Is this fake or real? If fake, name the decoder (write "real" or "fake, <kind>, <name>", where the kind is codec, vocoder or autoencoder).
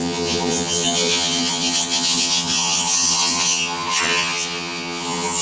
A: fake, vocoder, HiFi-GAN